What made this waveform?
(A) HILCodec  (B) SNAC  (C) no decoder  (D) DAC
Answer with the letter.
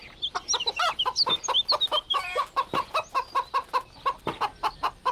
C